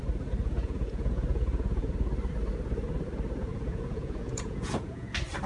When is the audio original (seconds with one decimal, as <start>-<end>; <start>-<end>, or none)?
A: 0.0-0.4; 1.9-3.5; 5.1-5.5